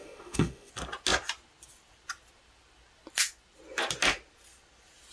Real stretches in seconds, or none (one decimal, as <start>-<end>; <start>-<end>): 0.7-5.1